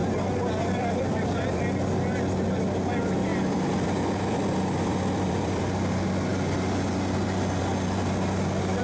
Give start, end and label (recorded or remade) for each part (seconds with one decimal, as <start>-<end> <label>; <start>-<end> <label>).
0.0-1.6 remade; 1.6-3.3 recorded; 3.3-5.6 remade; 5.6-8.8 recorded